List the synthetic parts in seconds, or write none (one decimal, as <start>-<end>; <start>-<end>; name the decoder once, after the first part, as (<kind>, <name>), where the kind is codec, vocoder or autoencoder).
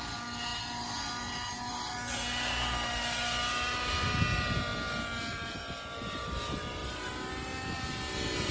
none